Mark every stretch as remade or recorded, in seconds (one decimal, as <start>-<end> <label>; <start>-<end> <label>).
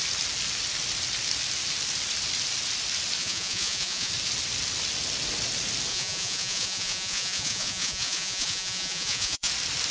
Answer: 0.0-3.2 recorded; 3.2-4.1 remade; 4.1-5.9 recorded; 5.9-9.5 remade; 9.5-9.9 recorded